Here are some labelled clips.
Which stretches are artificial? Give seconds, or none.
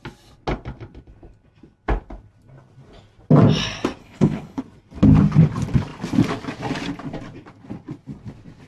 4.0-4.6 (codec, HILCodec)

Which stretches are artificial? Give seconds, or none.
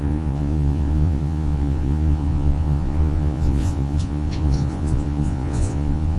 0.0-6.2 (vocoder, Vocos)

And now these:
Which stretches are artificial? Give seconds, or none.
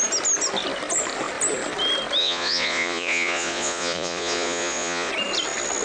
2.2-5.1 (vocoder, Vocos)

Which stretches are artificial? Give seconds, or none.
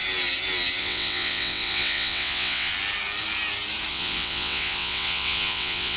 0.8-2.7 (vocoder, WaveNeXt); 3.9-6.0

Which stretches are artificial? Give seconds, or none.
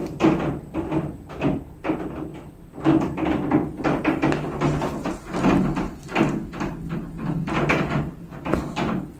0.0-1.3 (vocoder, BigVGAN v2)